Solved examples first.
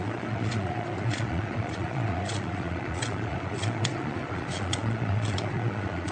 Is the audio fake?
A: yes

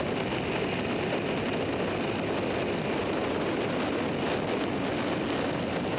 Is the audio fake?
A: no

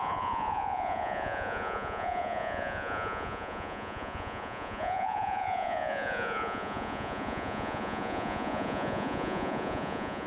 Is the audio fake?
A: yes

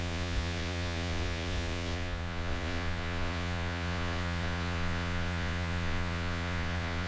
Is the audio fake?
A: yes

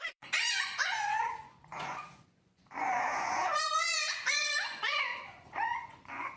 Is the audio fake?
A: yes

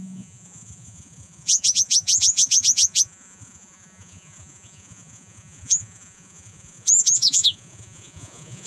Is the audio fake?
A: yes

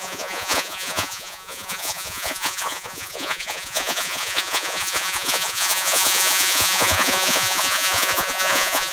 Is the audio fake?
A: yes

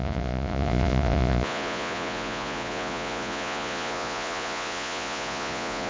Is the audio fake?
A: yes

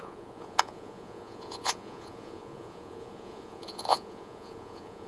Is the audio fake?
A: yes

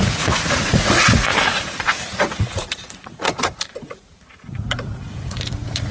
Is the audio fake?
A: yes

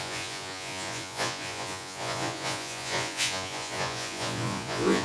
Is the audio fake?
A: yes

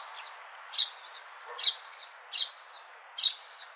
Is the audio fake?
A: no